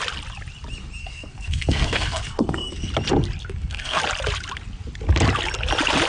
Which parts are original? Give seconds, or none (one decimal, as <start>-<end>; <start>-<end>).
0.0-1.0; 2.9-3.4; 4.0-6.1